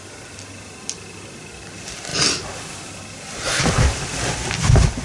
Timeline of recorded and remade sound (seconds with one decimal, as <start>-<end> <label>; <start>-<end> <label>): 0.0-5.0 recorded